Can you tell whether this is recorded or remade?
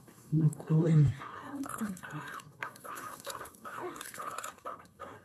remade